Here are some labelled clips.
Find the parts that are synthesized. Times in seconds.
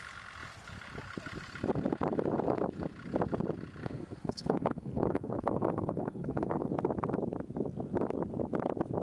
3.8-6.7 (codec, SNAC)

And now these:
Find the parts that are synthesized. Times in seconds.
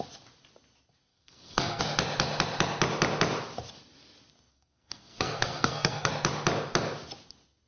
1.1-1.8 (codec, SNAC); 4.5-6.1